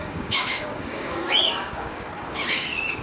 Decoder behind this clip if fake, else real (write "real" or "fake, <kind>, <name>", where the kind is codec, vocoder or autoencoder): fake, codec, DAC